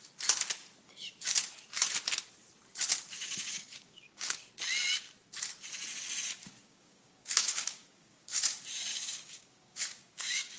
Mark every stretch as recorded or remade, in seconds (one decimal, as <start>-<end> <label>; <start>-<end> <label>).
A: 0.0-3.2 recorded; 3.2-4.5 remade; 4.5-6.6 recorded; 6.6-8.5 remade; 8.5-8.9 recorded; 8.9-10.6 remade